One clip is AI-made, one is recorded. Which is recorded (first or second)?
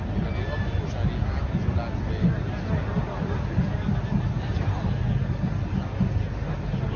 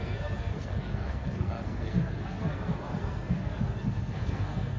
first